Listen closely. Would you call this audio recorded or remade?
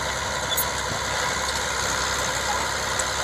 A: recorded